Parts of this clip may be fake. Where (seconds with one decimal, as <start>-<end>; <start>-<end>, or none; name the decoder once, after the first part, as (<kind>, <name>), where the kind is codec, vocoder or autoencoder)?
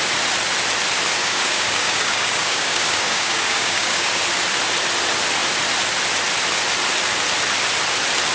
1.2-4.2 (codec, DAC)